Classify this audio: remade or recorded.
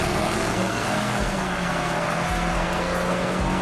remade